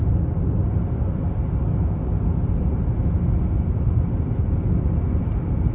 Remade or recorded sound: recorded